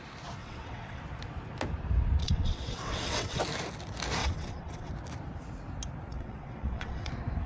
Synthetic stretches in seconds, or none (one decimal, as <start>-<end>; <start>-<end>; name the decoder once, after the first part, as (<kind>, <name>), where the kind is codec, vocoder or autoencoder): 0.4-1.0 (vocoder, WaveNeXt); 2.2-3.4; 4.2-4.9; 6.1-7.1

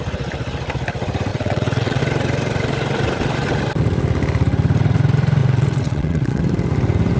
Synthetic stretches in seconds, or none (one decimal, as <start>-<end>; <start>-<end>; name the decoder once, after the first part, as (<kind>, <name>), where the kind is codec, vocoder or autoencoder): 1.3-2.0 (vocoder, WaveNeXt); 5.4-6.4

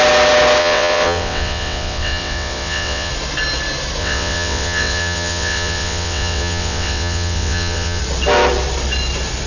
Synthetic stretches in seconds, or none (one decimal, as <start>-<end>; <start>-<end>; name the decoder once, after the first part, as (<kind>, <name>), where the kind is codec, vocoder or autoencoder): 0.6-3.1 (vocoder, WaveNeXt); 4.0-8.0

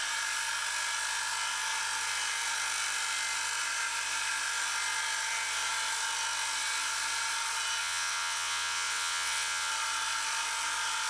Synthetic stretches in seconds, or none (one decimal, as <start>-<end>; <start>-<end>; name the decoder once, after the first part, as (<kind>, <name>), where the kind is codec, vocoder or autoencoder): 7.8-9.7 (vocoder, WaveNeXt)

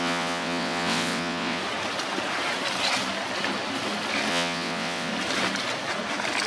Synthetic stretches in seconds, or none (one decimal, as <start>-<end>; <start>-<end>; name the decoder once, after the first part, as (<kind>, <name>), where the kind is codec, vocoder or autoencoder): 0.0-1.6 (vocoder, WaveNeXt); 4.3-5.1